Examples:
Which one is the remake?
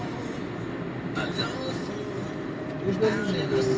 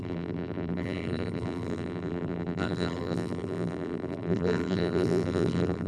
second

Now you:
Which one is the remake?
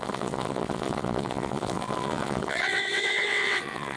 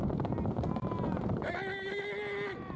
first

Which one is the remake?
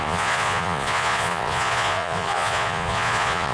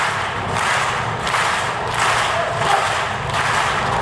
first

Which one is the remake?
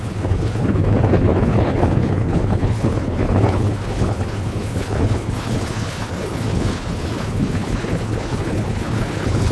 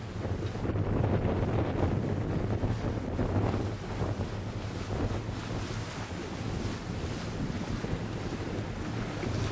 first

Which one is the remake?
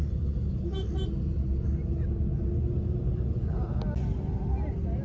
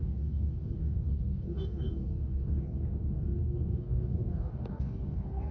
second